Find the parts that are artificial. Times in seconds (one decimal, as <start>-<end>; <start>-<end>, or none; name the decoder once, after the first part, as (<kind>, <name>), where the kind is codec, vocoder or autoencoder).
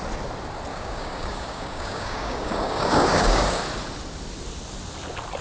0.7-3.6 (codec, DAC)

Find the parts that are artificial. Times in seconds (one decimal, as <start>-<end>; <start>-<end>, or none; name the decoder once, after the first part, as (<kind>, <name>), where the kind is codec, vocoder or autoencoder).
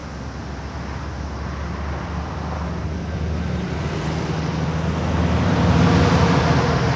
none